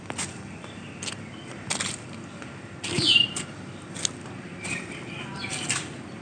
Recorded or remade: recorded